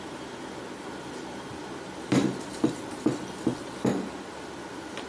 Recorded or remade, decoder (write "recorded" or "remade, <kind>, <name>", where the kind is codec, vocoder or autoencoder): recorded